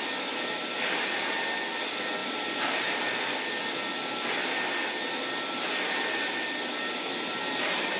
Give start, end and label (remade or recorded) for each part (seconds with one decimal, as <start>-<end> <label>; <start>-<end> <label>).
0.0-2.2 recorded; 2.2-3.2 remade; 3.2-8.0 recorded

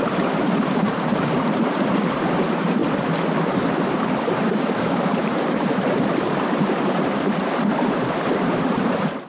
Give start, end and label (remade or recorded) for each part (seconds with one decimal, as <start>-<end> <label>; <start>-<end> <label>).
0.0-2.8 remade; 2.8-4.2 recorded; 4.2-9.3 remade

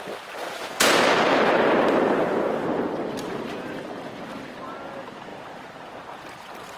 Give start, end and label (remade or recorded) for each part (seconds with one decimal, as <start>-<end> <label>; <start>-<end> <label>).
0.0-1.3 recorded; 1.3-2.9 remade; 2.9-5.3 recorded; 5.3-5.8 remade; 5.8-6.8 recorded